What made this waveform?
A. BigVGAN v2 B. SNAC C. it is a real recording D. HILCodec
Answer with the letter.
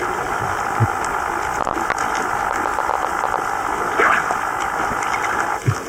C